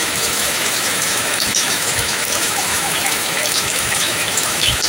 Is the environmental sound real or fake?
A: fake